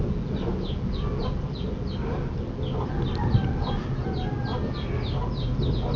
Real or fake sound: real